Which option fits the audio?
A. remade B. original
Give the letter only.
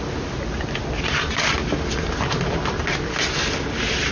B